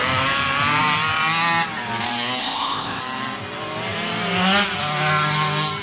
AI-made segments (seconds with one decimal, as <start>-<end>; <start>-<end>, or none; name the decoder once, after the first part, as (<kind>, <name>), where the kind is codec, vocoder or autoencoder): 2.4-3.0 (codec, ZipCodec)